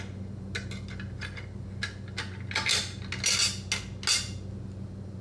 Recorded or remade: recorded